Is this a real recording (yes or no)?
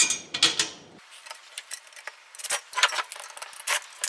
yes